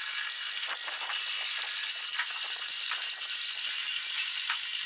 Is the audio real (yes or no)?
no